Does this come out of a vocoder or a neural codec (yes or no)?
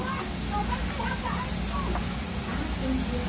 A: no